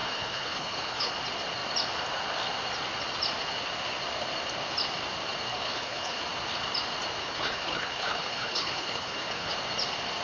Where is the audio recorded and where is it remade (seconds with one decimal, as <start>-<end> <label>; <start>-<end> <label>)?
0.0-1.1 remade; 1.1-5.5 recorded; 5.5-6.2 remade; 6.2-7.2 recorded; 7.2-9.5 remade; 9.5-10.2 recorded